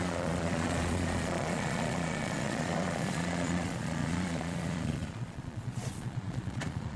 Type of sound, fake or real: fake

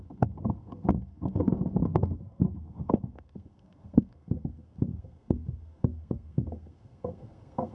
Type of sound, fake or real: fake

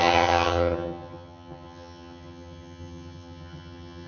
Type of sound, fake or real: fake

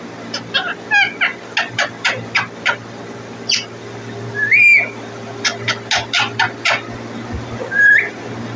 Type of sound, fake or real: real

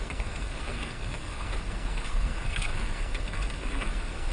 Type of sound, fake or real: fake